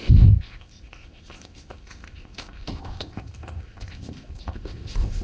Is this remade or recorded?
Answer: remade